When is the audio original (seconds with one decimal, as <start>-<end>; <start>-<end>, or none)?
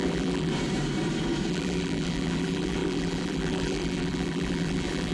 0.5-1.5